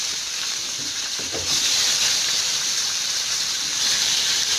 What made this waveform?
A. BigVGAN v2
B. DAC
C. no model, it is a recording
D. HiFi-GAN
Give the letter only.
A